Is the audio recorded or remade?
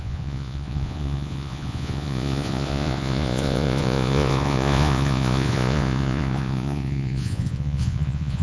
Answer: remade